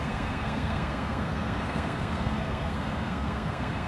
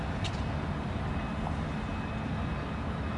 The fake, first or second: first